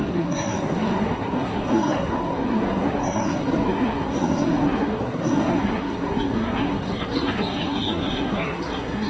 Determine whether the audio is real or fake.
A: fake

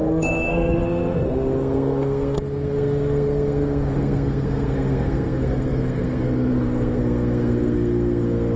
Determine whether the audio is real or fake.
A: fake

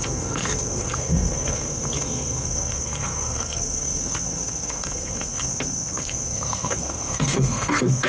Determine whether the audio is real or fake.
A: fake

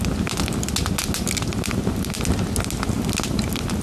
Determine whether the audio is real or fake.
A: real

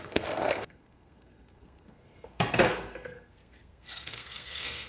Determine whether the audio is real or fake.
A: fake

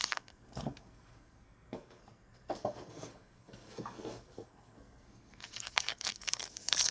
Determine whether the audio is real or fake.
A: fake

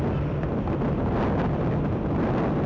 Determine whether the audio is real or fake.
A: real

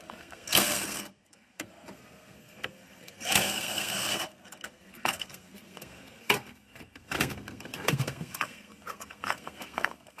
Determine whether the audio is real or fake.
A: fake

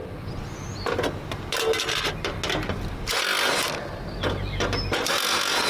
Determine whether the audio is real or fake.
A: real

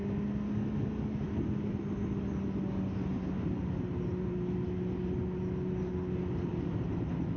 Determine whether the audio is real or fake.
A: real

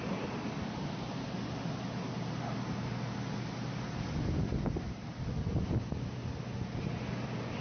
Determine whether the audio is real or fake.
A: real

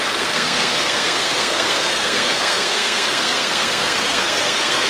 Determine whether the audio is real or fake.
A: fake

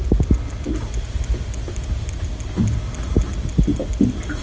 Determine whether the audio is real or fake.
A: real